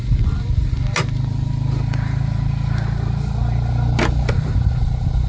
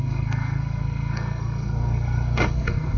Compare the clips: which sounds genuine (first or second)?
first